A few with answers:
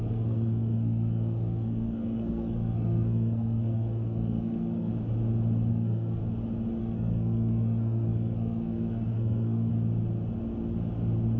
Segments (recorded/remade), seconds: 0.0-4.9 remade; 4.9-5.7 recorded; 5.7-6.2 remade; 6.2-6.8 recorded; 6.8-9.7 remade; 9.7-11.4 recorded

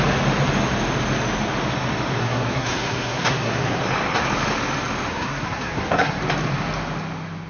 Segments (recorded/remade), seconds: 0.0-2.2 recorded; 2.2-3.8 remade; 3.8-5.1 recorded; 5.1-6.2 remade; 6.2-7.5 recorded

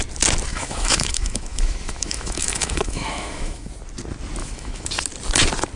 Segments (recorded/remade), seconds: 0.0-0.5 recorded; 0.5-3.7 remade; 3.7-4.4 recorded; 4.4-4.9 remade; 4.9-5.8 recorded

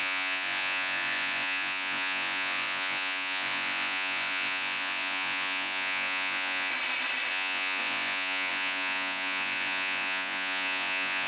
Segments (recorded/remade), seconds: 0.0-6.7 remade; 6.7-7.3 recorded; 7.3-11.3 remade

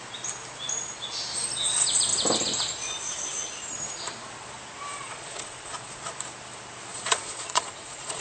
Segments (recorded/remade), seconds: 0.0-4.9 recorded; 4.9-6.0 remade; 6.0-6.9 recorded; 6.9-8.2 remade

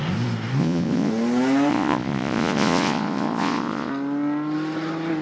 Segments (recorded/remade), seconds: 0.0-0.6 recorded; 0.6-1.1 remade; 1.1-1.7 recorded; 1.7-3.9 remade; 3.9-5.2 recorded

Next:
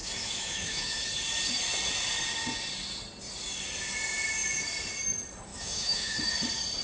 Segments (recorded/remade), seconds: 0.0-1.0 remade; 1.0-5.5 recorded; 5.5-6.2 remade; 6.2-6.8 recorded